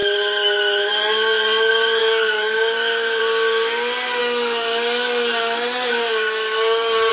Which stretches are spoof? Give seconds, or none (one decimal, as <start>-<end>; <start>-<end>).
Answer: 0.0-0.9; 2.0-3.2; 4.2-7.1